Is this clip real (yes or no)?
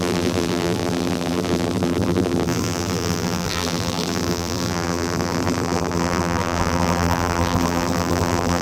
no